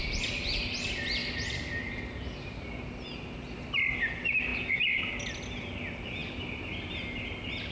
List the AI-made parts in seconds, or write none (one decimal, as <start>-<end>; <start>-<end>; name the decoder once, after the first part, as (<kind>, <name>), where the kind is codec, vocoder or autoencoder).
none